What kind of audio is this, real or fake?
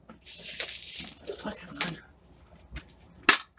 real